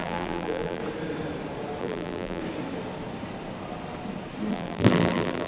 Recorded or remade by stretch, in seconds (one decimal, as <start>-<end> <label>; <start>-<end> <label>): 0.0-0.8 remade; 0.8-1.8 recorded; 1.8-2.4 remade; 2.4-4.5 recorded; 4.5-5.5 remade